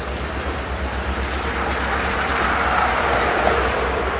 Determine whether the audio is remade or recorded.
recorded